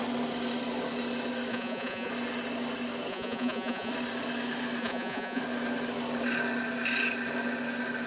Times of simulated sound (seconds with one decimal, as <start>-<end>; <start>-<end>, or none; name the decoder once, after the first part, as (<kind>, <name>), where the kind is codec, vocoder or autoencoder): 1.5-2.1 (vocoder, Vocos); 3.1-3.9; 4.8-5.4